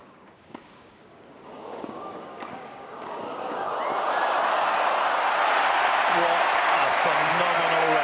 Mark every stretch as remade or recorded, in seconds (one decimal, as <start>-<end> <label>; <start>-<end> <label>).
0.0-3.7 remade; 3.7-8.0 recorded

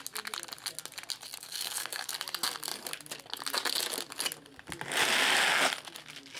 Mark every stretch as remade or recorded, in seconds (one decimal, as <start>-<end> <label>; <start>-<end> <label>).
0.0-1.4 recorded; 1.4-2.1 remade; 2.1-6.4 recorded

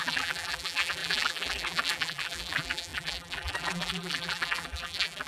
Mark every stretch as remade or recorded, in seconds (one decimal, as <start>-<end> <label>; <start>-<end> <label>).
0.0-5.3 remade

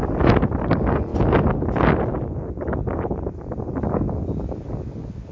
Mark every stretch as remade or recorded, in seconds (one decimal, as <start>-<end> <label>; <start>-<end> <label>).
0.0-5.3 recorded

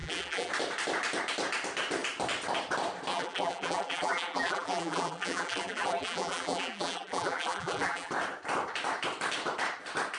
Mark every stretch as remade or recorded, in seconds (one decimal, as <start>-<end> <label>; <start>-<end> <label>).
0.0-0.5 remade; 0.5-3.1 recorded; 3.1-8.1 remade; 8.1-10.2 recorded

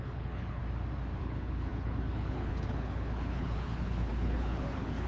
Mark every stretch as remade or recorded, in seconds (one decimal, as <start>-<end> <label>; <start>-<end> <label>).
0.0-0.6 remade; 0.6-1.2 recorded; 1.2-5.1 remade

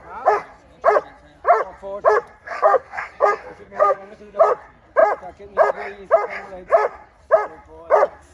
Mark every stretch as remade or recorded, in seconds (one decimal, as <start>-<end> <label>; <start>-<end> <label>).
0.0-2.4 recorded; 2.4-4.4 remade; 4.4-8.3 recorded